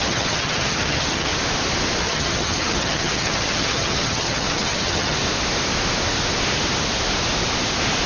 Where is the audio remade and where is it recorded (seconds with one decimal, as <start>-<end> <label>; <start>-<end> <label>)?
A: 0.0-1.3 remade; 1.3-2.0 recorded; 2.0-5.2 remade; 5.2-8.1 recorded